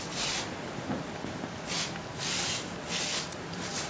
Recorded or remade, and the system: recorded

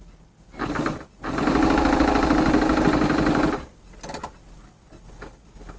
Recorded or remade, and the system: recorded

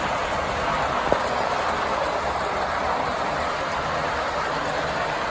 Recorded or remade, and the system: recorded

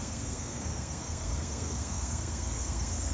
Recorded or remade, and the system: remade, codec, SNAC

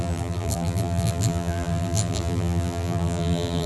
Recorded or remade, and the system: remade, vocoder, BigVGAN v2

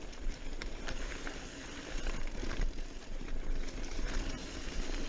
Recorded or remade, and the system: remade, vocoder, BigVGAN v2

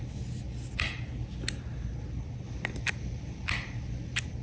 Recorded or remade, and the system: recorded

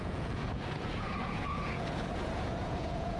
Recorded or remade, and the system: remade, vocoder, Vocos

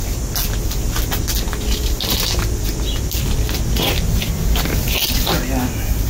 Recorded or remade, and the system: recorded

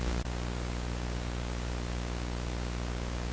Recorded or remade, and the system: remade, vocoder, Vocos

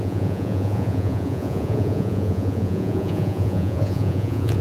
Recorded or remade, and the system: remade, vocoder, Vocos